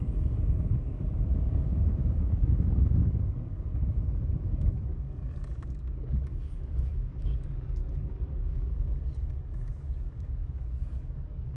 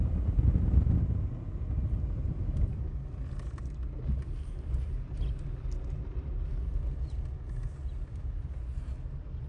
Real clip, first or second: second